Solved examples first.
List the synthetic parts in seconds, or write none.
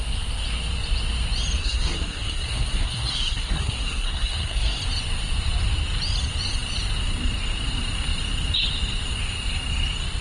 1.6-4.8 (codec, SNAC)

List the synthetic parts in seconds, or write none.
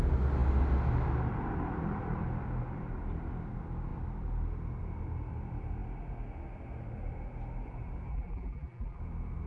8.1-9.0 (vocoder, BigVGAN v2)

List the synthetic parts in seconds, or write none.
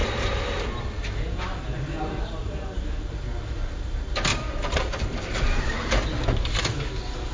0.0-0.8 (vocoder, BigVGAN v2); 2.4-3.1; 4.3-5.9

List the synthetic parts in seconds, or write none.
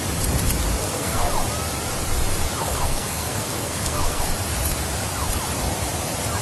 0.8-1.3 (codec, SNAC); 2.6-4.3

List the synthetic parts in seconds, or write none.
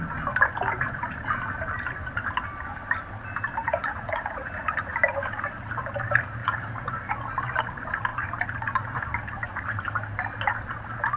3.6-4.5 (vocoder, Vocos); 6.4-6.9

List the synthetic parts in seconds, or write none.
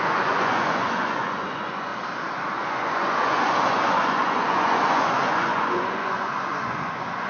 0.0-1.9 (vocoder, Vocos); 2.6-7.3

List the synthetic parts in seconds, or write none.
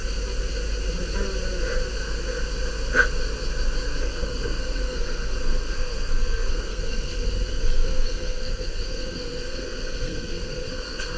4.0-11.2 (codec, SNAC)